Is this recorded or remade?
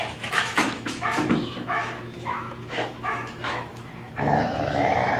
remade